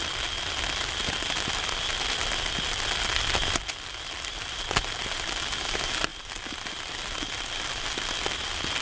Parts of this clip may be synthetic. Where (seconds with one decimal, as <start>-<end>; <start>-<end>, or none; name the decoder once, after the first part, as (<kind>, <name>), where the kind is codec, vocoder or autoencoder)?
none